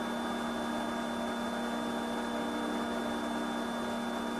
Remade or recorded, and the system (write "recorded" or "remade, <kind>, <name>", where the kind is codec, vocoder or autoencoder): recorded